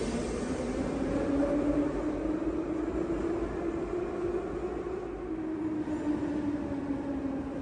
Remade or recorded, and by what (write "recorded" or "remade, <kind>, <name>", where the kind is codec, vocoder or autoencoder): recorded